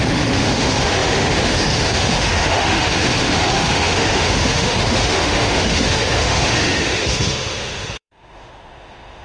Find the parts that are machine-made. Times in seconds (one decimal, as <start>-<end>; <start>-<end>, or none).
0.0-9.2